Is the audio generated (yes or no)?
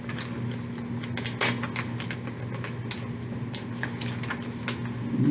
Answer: no